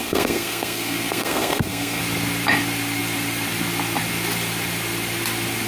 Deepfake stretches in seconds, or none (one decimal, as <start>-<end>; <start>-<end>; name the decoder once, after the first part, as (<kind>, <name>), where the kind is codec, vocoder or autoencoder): 0.0-2.0 (codec, SNAC)